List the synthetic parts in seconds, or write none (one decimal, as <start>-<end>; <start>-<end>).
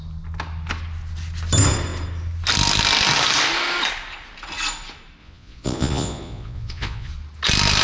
5.2-7.1